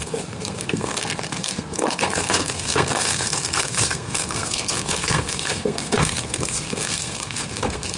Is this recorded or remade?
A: remade